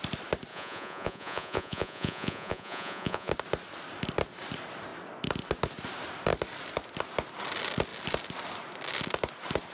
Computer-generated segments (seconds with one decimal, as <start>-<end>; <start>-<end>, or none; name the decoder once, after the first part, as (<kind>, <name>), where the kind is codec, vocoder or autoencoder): 0.5-3.3 (vocoder, Vocos)